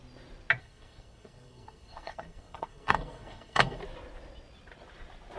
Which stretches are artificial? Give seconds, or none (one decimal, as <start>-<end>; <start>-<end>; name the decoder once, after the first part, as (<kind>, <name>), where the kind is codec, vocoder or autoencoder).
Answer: 0.6-3.8 (codec, SNAC)